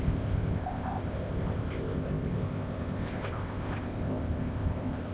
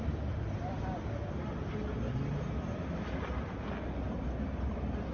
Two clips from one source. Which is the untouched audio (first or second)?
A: second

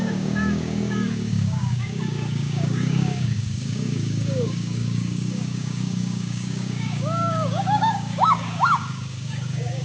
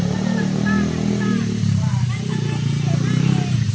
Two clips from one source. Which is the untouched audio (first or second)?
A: second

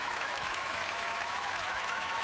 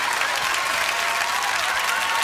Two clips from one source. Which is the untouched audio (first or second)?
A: second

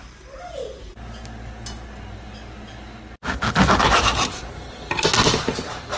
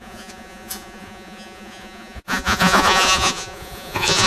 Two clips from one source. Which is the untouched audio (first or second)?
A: first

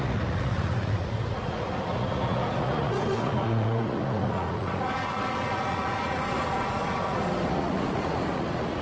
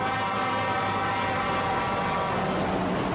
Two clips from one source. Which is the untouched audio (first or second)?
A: second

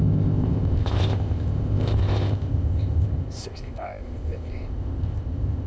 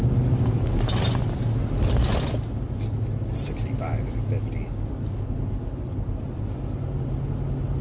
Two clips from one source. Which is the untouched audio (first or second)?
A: second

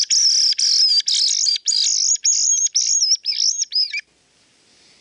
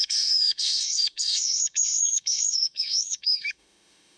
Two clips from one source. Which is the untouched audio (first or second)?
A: first